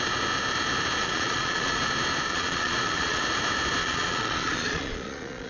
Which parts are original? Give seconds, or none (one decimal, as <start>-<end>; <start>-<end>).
0.0-1.0; 1.8-2.3; 3.2-3.8